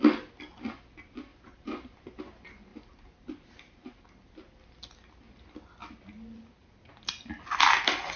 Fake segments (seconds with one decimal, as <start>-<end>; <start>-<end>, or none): 1.3-2.2; 2.7-4.0; 6.6-7.4